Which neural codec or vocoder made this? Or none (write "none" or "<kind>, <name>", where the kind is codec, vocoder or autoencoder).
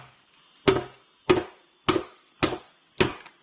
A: none